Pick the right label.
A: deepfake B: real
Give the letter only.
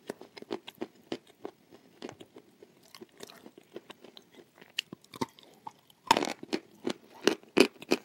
B